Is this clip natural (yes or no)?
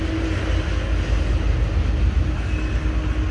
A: yes